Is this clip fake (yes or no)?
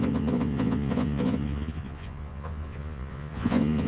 yes